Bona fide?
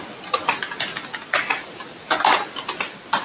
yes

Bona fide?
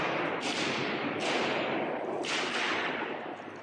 yes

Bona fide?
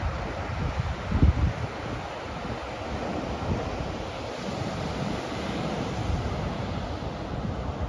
yes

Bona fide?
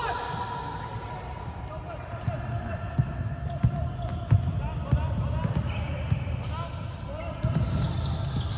yes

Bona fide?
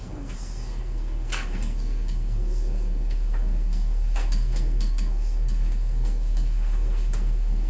no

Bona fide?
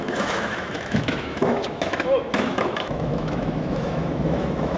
no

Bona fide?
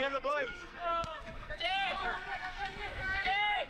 no